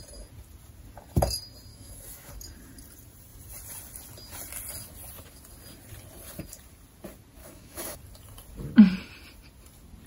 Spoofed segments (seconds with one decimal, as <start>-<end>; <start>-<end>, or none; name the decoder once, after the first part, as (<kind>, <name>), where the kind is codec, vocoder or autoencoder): 1.7-2.3 (autoencoder, DAC-VAE); 7.4-8.0